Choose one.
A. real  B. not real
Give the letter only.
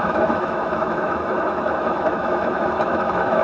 B